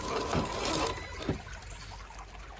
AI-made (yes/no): no